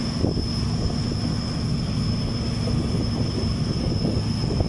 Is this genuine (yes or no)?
yes